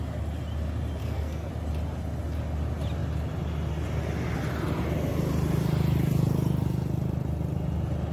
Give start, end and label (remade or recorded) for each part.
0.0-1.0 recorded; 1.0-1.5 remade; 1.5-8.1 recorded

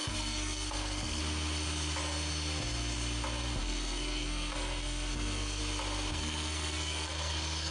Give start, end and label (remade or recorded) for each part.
0.0-1.2 remade; 1.2-3.6 recorded; 3.6-5.6 remade; 5.6-6.1 recorded; 6.1-7.7 remade

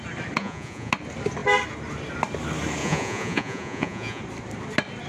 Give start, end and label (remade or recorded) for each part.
0.0-0.4 recorded; 0.4-0.9 remade; 0.9-2.8 recorded; 2.8-4.2 remade; 4.2-5.1 recorded